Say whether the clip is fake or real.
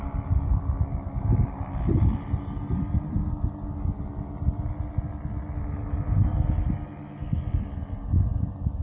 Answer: real